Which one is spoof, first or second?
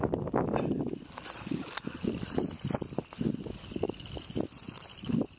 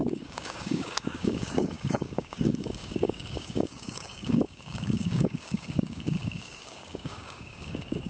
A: second